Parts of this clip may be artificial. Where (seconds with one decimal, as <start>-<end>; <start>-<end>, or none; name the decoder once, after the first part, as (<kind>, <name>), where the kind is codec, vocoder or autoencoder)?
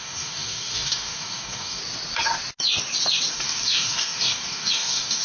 0.0-1.8 (codec, DAC); 3.3-5.2